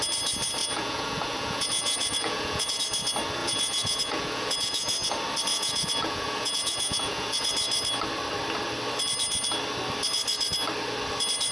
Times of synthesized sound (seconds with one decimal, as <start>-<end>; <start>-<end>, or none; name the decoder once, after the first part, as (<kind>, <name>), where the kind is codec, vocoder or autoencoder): 0.6-2.8 (vocoder, Vocos); 3.4-5.1; 5.5-7.5